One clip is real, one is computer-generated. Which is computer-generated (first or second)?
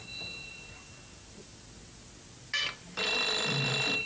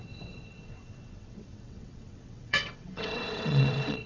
second